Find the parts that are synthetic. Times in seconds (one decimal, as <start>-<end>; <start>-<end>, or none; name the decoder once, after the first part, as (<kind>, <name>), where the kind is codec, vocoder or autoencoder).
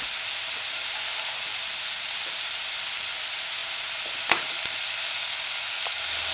none